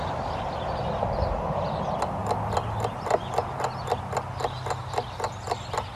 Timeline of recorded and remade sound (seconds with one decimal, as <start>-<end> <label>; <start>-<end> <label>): 0.0-6.0 recorded